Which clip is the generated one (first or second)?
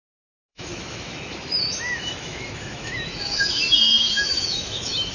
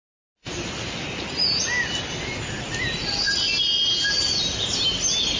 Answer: first